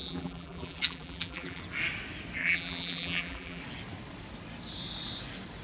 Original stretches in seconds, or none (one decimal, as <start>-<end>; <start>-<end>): 1.6-2.4; 3.6-5.6